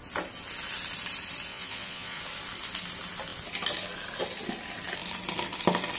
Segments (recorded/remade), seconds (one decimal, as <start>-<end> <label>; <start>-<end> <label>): 0.0-1.5 recorded; 1.5-2.2 remade; 2.2-6.0 recorded